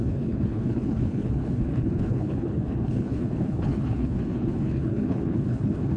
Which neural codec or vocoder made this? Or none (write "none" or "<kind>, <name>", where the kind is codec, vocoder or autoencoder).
codec, HILCodec